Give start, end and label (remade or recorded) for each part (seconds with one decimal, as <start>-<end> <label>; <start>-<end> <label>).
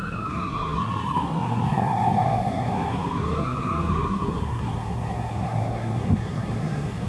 0.0-7.1 remade